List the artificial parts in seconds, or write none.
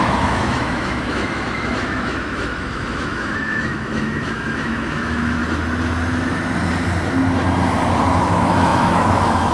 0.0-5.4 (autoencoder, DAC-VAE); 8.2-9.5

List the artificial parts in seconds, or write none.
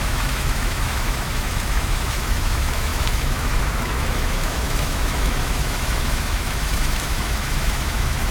0.0-8.3 (autoencoder, DAC-VAE)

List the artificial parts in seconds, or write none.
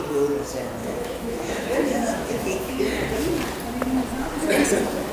0.8-2.8 (autoencoder, DAC-VAE)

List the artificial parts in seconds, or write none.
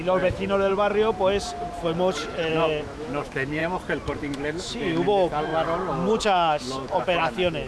0.0-0.7 (autoencoder, DAC-VAE); 2.5-3.6; 4.2-5.5; 6.2-7.7